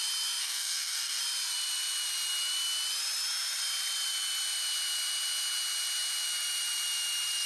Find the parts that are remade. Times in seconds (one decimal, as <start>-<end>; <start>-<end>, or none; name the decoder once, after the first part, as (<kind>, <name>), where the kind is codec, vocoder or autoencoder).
0.4-1.2 (codec, DAC)